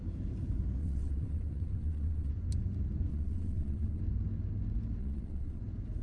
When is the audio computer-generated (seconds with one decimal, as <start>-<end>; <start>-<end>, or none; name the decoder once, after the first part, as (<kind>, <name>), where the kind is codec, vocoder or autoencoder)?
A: 0.8-2.3 (vocoder, WaveNeXt); 3.1-4.0; 5.0-5.6